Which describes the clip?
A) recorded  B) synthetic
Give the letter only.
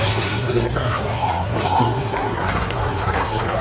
B